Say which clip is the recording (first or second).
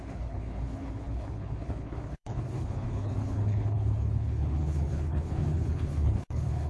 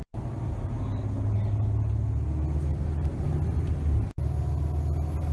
second